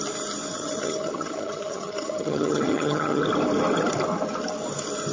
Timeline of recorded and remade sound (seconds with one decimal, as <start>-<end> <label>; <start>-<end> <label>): 0.0-0.5 recorded; 0.5-3.2 remade; 3.2-5.1 recorded